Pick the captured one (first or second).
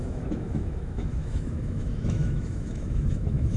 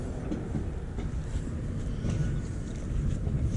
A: second